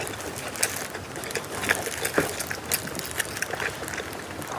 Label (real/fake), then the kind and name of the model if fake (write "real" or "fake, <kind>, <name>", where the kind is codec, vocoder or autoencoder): real